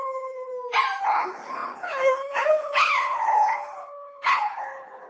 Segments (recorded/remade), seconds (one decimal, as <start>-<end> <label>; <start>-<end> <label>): 0.0-0.5 remade; 0.5-1.0 recorded; 1.0-5.1 remade